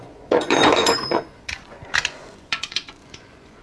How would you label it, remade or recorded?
remade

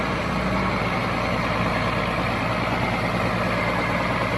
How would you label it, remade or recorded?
recorded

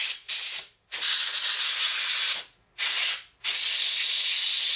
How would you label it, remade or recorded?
recorded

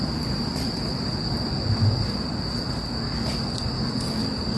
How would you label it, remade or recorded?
recorded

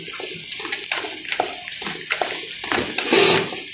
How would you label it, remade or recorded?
recorded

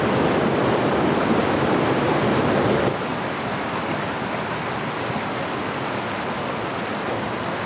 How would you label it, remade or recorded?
recorded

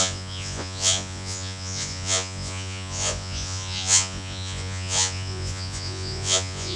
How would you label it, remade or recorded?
remade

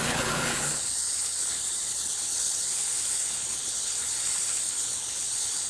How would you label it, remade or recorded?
remade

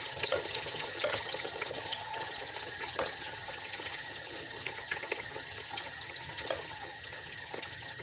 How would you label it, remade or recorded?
remade